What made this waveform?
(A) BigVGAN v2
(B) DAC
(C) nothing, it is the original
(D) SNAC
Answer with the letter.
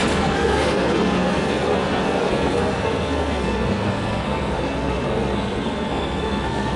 D